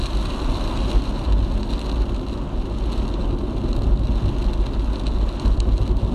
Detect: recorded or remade recorded